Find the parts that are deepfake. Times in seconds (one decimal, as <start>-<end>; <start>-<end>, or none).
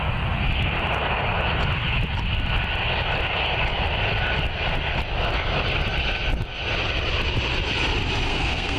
8.3-8.8